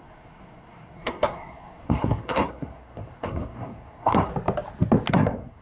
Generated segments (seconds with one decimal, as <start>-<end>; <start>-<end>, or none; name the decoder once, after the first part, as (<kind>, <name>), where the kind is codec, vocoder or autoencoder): 0.0-4.3 (codec, SNAC); 5.1-5.6